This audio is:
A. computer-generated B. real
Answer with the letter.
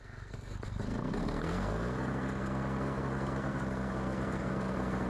A